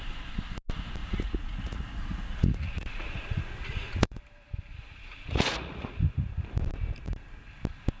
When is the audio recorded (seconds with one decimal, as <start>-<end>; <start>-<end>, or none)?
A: 0.0-1.0; 4.2-4.7; 6.3-8.0